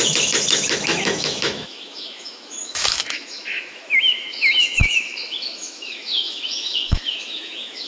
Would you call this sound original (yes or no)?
no